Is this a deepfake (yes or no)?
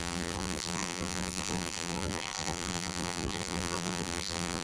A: yes